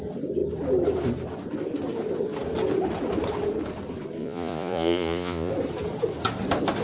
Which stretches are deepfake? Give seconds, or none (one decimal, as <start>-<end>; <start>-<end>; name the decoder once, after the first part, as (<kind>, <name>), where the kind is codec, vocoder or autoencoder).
4.2-5.5 (vocoder, Vocos)